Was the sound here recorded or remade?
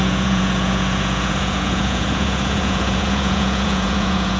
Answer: remade